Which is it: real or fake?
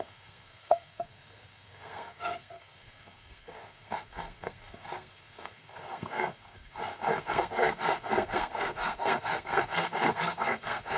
fake